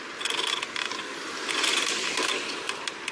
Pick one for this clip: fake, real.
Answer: real